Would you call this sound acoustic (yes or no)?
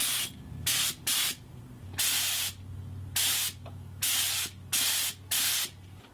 yes